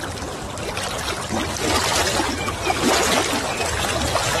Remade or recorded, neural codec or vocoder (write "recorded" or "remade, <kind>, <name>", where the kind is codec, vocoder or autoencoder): recorded